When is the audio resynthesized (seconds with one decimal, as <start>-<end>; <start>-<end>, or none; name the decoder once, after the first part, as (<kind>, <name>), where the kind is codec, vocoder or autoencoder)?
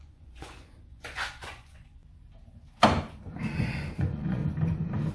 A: 0.0-2.0 (vocoder, Vocos); 3.5-4.4